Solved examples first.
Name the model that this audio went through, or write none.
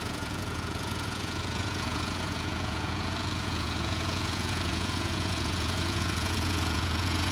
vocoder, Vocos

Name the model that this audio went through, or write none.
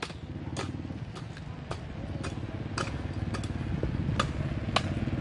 none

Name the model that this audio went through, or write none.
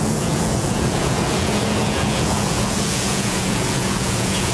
vocoder, Vocos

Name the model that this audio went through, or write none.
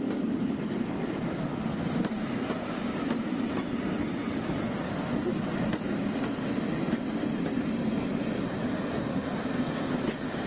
none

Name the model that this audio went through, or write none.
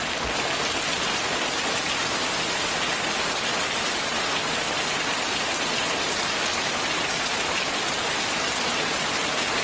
none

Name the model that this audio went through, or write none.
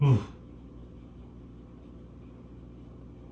none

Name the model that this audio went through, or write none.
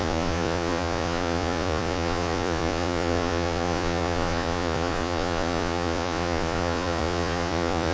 vocoder, Vocos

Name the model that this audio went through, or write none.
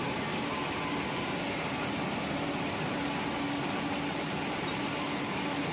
none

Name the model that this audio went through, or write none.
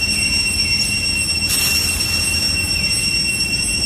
none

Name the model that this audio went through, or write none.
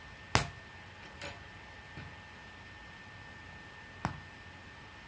none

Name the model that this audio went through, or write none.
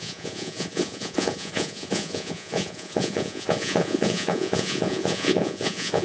vocoder, Vocos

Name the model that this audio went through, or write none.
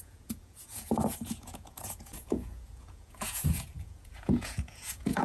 vocoder, Vocos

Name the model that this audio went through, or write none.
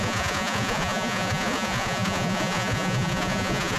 vocoder, Vocos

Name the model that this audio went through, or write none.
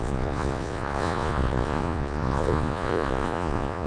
vocoder, Vocos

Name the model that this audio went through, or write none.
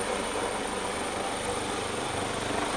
none